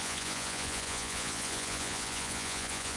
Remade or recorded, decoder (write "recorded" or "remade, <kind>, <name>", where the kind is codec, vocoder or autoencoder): remade, vocoder, Vocos